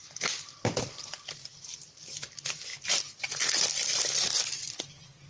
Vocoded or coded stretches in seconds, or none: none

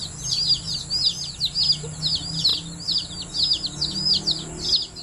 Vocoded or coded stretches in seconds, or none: none